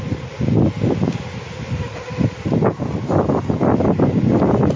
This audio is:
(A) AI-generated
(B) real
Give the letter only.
B